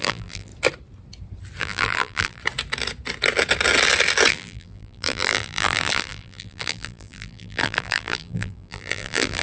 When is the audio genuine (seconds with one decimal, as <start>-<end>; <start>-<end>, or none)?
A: 0.5-1.6; 2.4-4.3